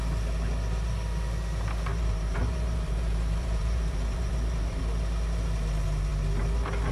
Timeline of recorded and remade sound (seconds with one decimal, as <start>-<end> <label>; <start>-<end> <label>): 0.0-1.9 recorded; 1.9-4.8 remade; 4.8-6.9 recorded